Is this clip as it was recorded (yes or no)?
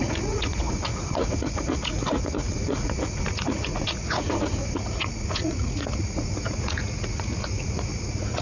no